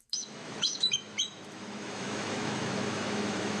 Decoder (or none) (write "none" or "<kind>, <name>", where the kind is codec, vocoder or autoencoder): autoencoder, DAC-VAE